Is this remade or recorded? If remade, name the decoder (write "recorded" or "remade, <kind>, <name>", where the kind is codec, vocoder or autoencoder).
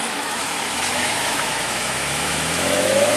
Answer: remade, autoencoder, DAC-VAE